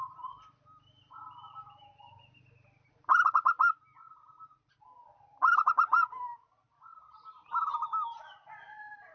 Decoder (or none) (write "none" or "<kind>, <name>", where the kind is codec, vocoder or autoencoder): none